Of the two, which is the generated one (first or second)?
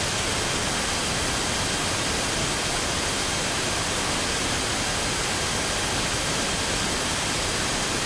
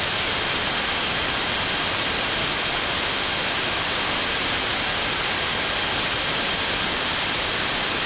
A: second